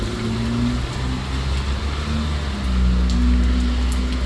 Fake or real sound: real